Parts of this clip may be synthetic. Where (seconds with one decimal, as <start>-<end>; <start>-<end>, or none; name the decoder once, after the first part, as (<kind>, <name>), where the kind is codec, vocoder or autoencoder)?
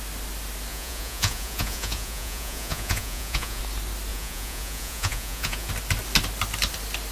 0.7-3.6 (vocoder, Vocos); 4.1-5.7